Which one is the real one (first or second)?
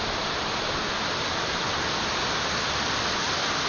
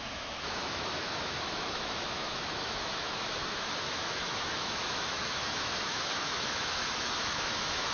first